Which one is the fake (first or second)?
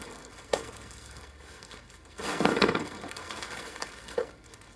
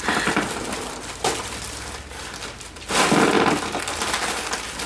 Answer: first